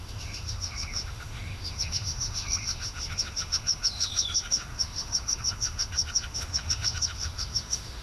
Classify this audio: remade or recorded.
remade